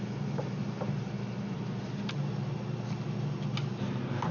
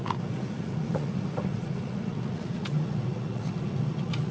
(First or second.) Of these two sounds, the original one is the first